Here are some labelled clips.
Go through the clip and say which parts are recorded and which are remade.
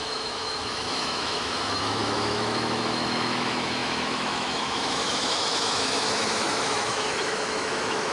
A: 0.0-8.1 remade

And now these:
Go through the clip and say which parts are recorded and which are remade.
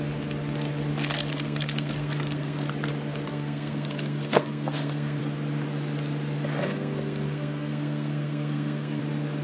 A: 0.0-1.3 recorded; 1.3-2.7 remade; 2.7-3.3 recorded; 3.3-5.2 remade; 5.2-6.6 recorded; 6.6-9.0 remade; 9.0-9.4 recorded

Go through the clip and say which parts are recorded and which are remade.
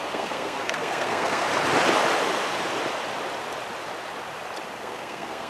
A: 0.0-1.5 remade; 1.5-4.8 recorded; 4.8-5.5 remade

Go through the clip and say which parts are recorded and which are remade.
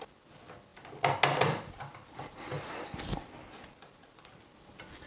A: 0.0-5.1 recorded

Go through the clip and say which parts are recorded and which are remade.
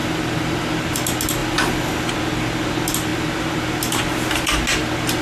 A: 0.0-5.2 recorded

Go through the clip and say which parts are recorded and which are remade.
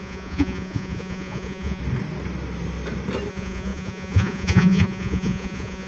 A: 0.0-1.8 remade; 1.8-3.3 recorded; 3.3-5.9 remade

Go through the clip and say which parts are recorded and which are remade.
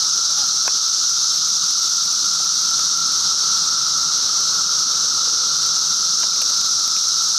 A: 0.0-7.4 recorded